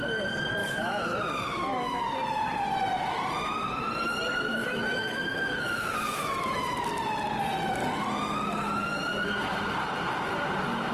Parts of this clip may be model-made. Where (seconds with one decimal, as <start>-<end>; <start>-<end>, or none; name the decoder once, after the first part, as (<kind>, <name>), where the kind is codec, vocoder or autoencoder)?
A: 0.6-2.0 (autoencoder, DAC-VAE); 4.5-6.8